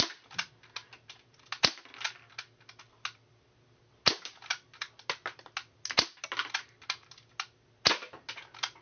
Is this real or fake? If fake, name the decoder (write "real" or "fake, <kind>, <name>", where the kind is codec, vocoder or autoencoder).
real